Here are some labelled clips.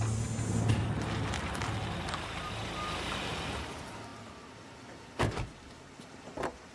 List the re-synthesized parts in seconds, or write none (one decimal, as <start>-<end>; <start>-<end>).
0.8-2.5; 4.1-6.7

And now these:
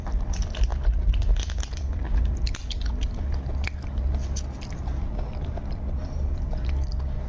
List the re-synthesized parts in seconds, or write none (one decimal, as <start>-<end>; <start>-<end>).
none

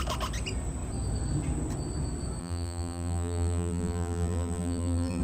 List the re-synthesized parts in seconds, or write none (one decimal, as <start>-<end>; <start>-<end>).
2.4-5.2

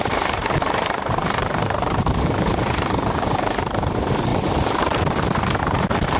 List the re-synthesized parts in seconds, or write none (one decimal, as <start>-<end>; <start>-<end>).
0.0-6.2